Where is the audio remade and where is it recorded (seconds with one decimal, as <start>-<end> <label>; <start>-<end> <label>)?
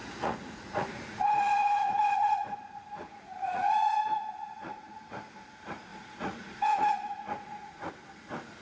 0.0-5.0 remade; 5.0-5.9 recorded; 5.9-7.9 remade; 7.9-8.6 recorded